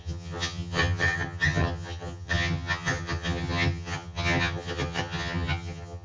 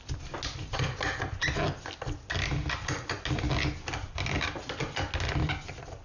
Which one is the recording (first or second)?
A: second